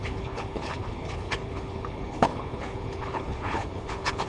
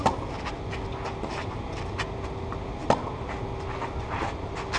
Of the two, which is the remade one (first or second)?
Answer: first